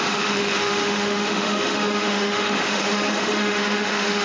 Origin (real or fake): fake